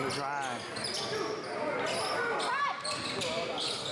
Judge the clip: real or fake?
real